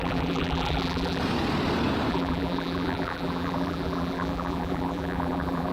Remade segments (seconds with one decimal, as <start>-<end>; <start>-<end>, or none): 0.0-1.2; 2.1-5.7